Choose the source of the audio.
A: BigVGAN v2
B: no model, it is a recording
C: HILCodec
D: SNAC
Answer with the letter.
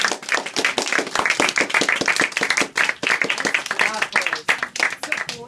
B